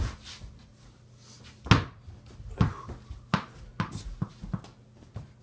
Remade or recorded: recorded